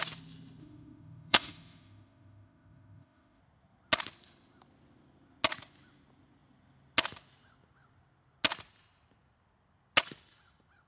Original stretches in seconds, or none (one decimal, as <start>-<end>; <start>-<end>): 0.0-0.6; 3.4-10.9